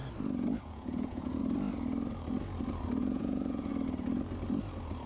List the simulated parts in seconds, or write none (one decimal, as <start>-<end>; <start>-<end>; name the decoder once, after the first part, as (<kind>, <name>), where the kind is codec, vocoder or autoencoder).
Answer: 0.6-1.4 (vocoder, Vocos); 3.0-3.7